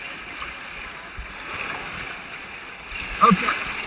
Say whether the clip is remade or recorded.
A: recorded